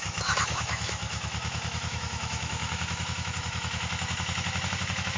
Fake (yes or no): yes